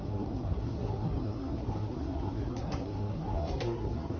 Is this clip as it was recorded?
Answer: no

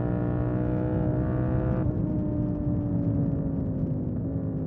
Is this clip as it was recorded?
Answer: yes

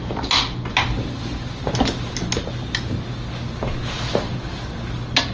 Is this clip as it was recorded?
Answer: yes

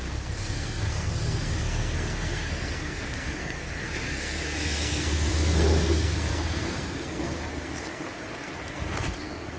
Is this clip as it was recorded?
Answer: no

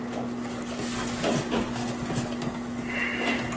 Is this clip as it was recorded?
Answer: yes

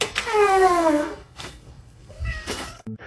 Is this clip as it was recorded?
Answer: no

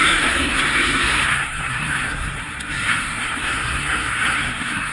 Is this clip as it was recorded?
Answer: no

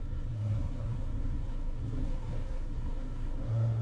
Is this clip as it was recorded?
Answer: no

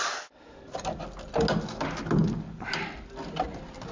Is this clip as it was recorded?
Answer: yes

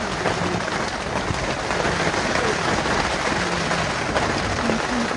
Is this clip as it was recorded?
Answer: yes